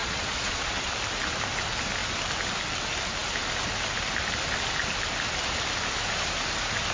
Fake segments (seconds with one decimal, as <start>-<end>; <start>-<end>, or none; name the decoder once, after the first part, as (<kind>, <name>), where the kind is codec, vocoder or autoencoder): 0.0-0.9 (vocoder, Vocos)